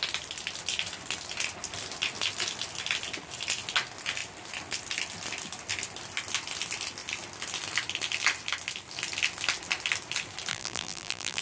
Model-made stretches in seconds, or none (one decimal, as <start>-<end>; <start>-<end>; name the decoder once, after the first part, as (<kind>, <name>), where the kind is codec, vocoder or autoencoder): 10.5-11.4 (vocoder, BigVGAN v2)